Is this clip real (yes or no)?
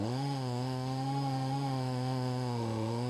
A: no